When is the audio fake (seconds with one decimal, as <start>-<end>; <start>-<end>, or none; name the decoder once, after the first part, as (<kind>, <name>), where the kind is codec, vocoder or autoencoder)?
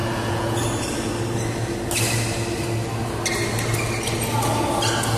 0.0-0.6 (vocoder, Vocos)